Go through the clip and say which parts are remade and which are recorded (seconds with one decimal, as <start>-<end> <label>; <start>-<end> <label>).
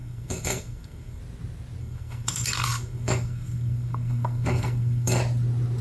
0.0-1.2 remade; 1.2-1.8 recorded; 1.8-5.2 remade; 5.2-5.8 recorded